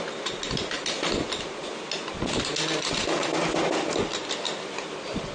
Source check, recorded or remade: recorded